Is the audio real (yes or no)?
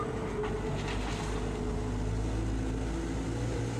yes